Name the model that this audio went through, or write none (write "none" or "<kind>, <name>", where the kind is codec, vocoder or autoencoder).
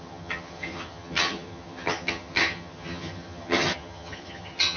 vocoder, HiFi-GAN